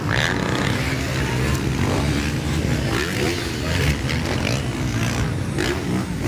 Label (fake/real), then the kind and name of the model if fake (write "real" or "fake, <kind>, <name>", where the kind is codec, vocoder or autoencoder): real